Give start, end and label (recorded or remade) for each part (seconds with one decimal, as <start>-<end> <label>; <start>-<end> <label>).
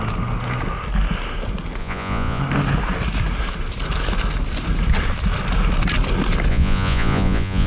0.0-1.8 recorded; 1.8-2.4 remade; 2.4-6.5 recorded; 6.5-7.7 remade